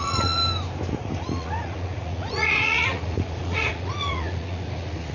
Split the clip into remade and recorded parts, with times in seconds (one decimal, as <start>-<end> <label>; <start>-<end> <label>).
0.0-0.4 remade; 0.4-0.9 recorded; 0.9-5.1 remade